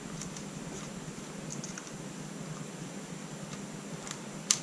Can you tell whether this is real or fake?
real